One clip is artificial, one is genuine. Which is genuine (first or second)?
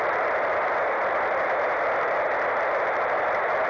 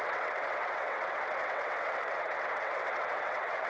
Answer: first